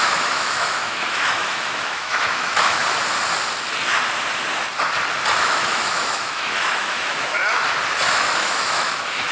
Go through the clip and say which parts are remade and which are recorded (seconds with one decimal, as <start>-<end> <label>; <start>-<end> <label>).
0.0-2.8 remade; 2.8-5.4 recorded; 5.4-7.4 remade; 7.4-8.1 recorded; 8.1-9.3 remade